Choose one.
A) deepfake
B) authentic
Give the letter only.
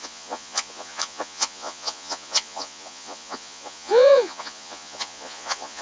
A